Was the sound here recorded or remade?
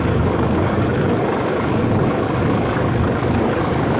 remade